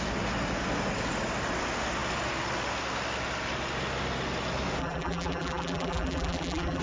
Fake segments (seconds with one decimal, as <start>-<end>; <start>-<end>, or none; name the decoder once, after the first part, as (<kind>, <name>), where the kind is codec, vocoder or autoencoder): 4.8-6.8 (vocoder, BigVGAN v2)